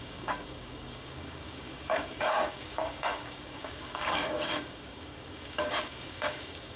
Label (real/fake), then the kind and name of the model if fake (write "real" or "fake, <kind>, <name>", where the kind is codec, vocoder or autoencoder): fake, codec, DAC